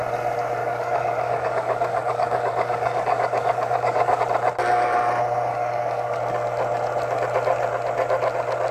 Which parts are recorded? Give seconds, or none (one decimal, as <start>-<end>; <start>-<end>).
0.0-0.6; 4.2-5.5; 6.2-8.7